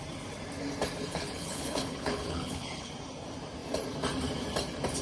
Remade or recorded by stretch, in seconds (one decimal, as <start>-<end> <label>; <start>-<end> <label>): 0.0-1.1 recorded; 1.1-2.9 remade; 2.9-5.0 recorded